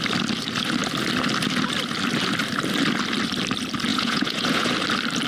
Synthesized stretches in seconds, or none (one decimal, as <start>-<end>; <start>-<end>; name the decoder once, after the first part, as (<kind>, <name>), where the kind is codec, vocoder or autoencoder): 3.9-4.7 (vocoder, Vocos)